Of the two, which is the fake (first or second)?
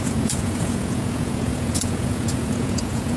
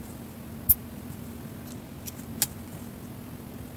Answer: first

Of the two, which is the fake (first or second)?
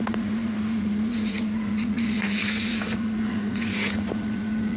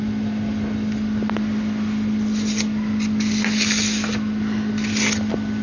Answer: first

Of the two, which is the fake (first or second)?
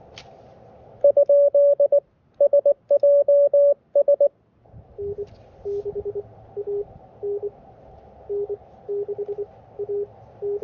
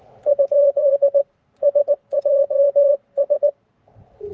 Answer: second